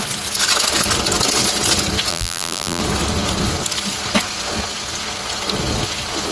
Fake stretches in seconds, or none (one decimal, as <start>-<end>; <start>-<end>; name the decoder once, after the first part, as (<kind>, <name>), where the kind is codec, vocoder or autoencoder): 2.1-2.8 (vocoder, BigVGAN v2)